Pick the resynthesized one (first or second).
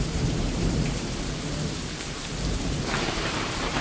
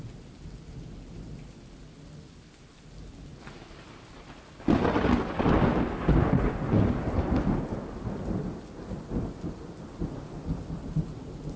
first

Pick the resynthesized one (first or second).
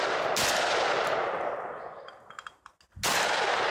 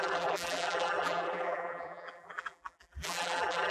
second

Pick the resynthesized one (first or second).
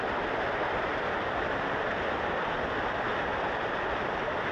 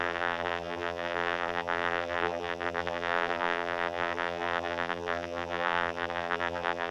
second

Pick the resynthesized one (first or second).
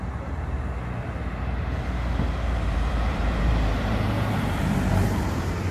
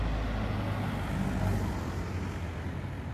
first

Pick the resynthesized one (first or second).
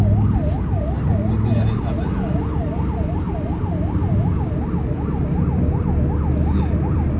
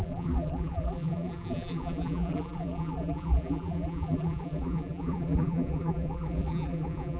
second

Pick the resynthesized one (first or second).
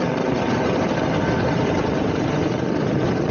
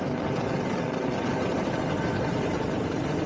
first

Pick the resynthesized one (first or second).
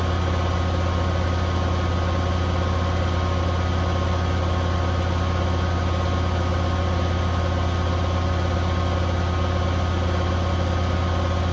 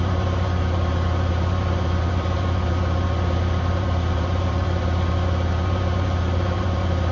second